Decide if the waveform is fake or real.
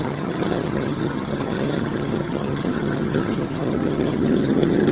fake